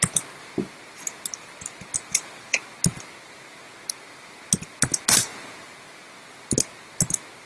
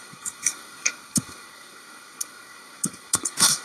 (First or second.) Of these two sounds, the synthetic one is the second